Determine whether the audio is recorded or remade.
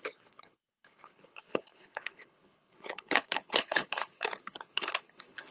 remade